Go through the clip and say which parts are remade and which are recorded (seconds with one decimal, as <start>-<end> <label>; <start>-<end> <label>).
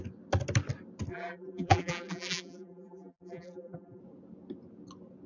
0.0-1.1 recorded; 1.1-4.0 remade; 4.0-5.3 recorded